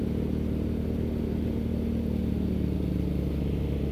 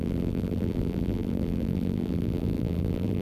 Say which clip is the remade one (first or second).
second